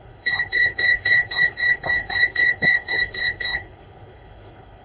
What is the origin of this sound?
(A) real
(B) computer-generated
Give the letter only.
B